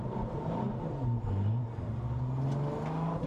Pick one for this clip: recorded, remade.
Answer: recorded